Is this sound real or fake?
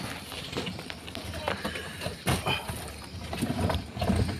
real